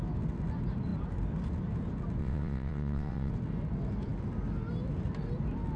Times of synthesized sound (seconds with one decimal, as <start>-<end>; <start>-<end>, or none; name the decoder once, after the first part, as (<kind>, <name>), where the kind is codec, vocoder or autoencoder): 2.2-3.3 (vocoder, WaveNeXt)